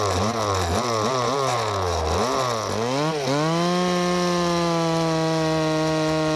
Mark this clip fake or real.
real